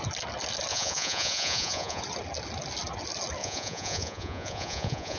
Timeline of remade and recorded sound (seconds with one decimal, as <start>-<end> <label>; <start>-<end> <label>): 0.0-0.7 recorded; 0.7-2.0 remade; 2.0-3.4 recorded; 3.4-5.2 remade